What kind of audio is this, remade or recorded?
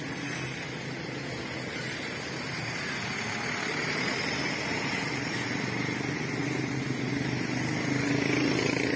recorded